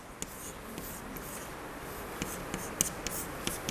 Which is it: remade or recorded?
recorded